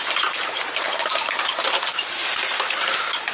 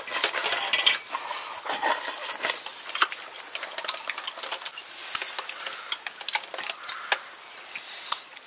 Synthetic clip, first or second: first